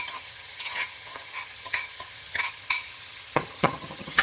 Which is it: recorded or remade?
remade